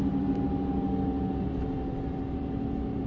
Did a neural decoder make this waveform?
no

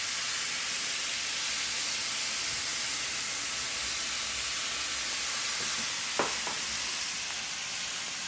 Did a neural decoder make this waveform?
no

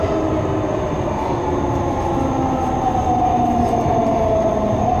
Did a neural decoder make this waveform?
no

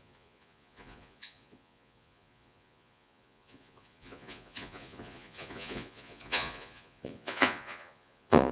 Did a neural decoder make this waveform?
yes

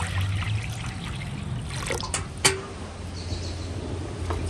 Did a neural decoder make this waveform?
no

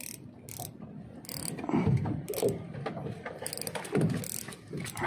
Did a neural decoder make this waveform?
no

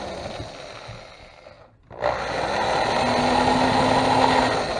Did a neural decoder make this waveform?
no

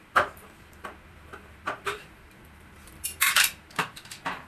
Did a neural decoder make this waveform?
yes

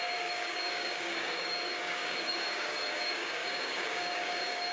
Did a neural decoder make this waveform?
yes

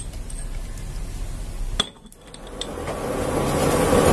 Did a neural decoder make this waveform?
no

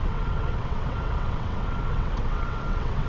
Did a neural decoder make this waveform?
yes